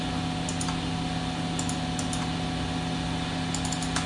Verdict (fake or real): real